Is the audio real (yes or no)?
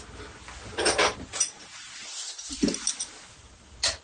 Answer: yes